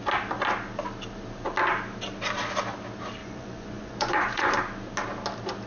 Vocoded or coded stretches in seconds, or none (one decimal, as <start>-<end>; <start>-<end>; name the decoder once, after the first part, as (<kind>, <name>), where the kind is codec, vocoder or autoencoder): 3.2-4.5 (vocoder, Vocos)